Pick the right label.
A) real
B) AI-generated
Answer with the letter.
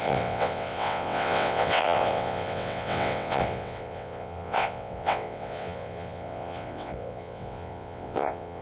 B